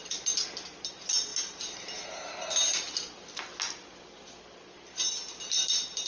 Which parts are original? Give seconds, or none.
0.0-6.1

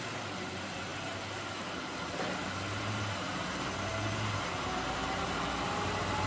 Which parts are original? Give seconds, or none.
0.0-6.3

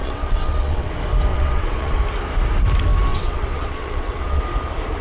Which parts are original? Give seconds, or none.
0.9-1.3; 2.0-3.1; 4.4-5.0

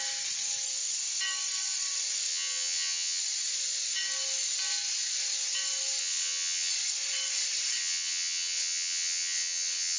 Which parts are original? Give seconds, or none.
0.0-2.3; 3.2-6.0; 6.7-7.8